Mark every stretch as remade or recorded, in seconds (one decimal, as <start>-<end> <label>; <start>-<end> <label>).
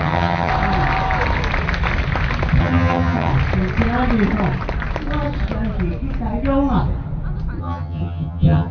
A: 0.0-0.5 remade; 0.5-2.6 recorded; 2.6-3.3 remade; 3.3-7.6 recorded; 7.6-8.7 remade